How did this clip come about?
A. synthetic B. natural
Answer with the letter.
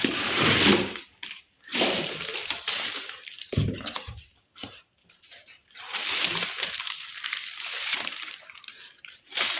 A